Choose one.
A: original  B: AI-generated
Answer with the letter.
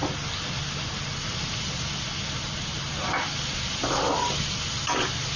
A